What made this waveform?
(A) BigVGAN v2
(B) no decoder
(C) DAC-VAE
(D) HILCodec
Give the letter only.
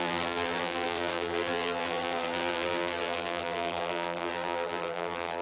A